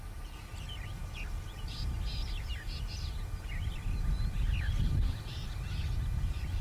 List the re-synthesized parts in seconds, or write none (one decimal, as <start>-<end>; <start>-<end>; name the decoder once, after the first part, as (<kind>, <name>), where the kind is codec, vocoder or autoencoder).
none